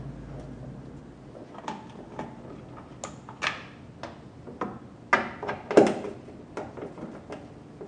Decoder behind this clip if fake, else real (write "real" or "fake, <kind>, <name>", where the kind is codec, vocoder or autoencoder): real